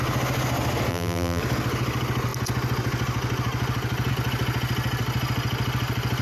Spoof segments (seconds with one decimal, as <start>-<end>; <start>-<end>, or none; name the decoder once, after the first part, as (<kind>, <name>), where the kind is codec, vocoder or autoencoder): 0.9-1.4 (vocoder, BigVGAN v2)